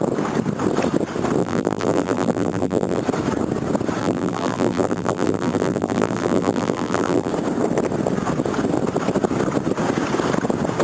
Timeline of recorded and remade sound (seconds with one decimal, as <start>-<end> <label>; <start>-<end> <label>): 0.0-1.4 recorded; 1.4-3.0 remade; 3.0-4.0 recorded; 4.0-7.3 remade; 7.3-10.8 recorded